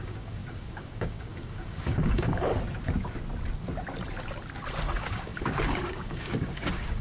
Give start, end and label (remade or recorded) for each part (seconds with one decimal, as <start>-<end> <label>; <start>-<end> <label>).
0.0-2.5 remade; 2.5-4.8 recorded; 4.8-7.0 remade